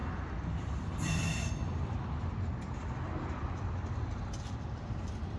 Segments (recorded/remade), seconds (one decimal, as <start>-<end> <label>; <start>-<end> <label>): 0.0-5.4 recorded